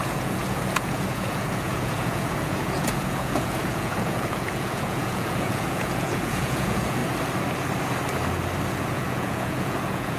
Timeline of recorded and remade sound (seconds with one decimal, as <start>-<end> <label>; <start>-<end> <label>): 0.0-7.0 remade; 7.0-8.7 recorded; 8.7-10.2 remade